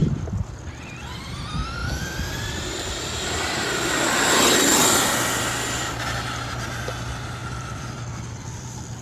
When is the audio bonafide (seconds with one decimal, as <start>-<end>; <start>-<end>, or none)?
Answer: 1.3-1.8; 2.8-7.4